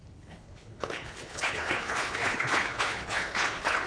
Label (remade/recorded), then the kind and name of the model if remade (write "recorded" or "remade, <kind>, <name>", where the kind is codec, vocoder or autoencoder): remade, codec, HILCodec